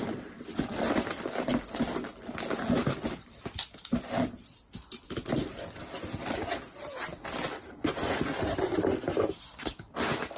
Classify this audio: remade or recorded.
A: recorded